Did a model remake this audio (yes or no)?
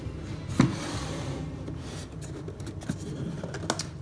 no